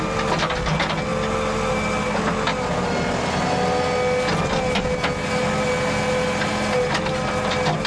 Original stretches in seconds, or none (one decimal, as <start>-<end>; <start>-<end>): 0.0-7.9